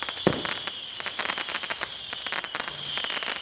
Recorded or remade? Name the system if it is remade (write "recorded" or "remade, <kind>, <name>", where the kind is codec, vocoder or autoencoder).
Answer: recorded